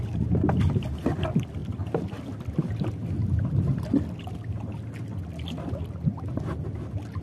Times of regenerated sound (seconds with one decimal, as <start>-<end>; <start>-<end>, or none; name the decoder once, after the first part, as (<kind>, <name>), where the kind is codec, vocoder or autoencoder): none